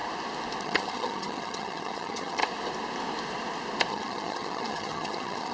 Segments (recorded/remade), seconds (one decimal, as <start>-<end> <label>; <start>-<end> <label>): 0.0-0.6 recorded; 0.6-2.4 remade; 2.4-3.9 recorded; 3.9-5.5 remade